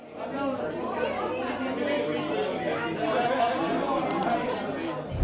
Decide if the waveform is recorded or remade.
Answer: recorded